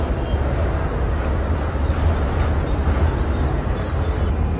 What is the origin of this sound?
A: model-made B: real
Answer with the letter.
B